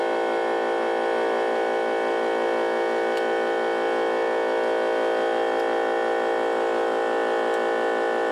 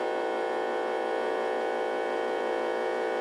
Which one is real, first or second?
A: first